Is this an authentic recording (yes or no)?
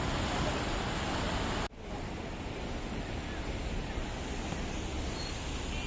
yes